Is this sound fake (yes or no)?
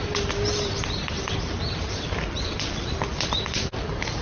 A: yes